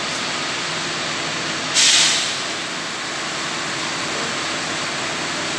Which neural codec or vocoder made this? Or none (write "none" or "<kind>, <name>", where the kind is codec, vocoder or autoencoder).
none